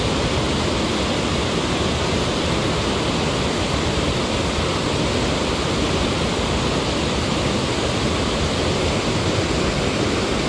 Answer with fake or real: real